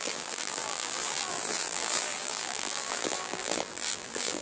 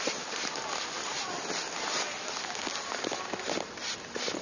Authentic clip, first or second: second